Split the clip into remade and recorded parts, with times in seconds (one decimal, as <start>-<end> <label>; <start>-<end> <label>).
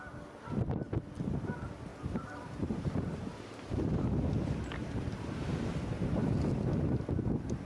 0.0-1.9 recorded; 1.9-3.8 remade; 3.8-4.8 recorded; 4.8-6.5 remade; 6.5-7.6 recorded